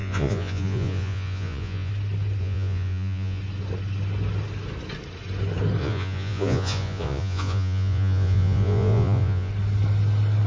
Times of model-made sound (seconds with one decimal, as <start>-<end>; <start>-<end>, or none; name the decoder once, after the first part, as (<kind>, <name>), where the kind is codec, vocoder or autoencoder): 0.0-1.9 (vocoder, Vocos); 2.4-3.4; 5.8-9.5